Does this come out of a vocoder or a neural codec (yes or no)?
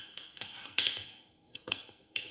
yes